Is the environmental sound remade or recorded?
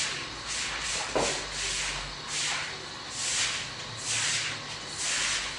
recorded